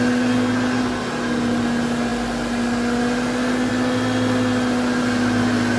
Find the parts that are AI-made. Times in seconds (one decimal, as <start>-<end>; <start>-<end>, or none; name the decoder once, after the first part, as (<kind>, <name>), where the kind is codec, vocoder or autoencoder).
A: none